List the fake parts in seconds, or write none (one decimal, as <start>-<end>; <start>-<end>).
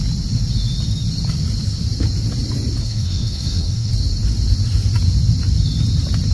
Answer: 2.8-3.9